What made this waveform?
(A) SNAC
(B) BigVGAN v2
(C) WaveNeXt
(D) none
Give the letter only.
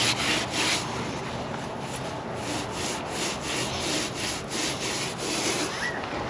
D